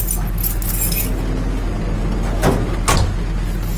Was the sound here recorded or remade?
recorded